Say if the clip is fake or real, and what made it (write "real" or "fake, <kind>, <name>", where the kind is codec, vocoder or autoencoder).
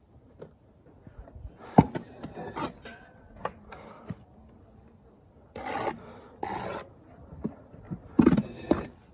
real